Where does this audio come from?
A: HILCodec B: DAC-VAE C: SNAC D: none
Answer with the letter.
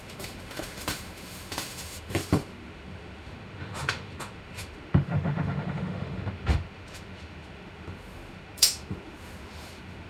B